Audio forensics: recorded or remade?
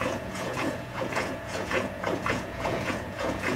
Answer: remade